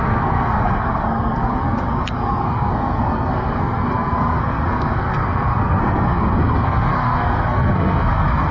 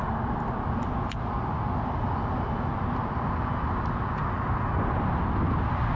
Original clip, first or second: second